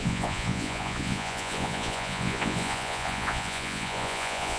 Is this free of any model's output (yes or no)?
no